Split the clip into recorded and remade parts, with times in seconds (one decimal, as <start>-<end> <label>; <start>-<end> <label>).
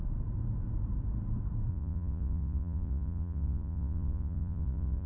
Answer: 0.0-1.7 recorded; 1.7-5.1 remade